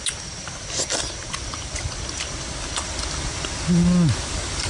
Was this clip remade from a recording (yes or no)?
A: no